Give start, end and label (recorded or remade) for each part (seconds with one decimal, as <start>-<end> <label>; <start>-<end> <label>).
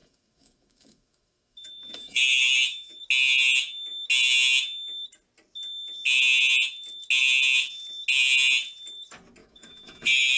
0.0-3.0 remade; 3.0-9.4 recorded; 9.4-10.4 remade